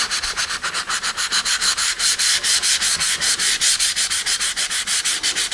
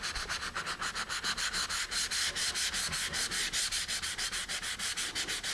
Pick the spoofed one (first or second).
first